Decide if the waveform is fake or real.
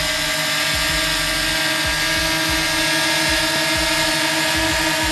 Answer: real